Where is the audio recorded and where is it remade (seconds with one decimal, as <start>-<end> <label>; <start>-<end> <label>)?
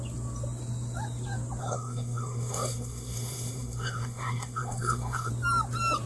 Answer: 0.0-1.6 recorded; 1.6-5.3 remade; 5.3-6.1 recorded